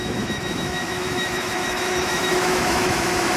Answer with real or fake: fake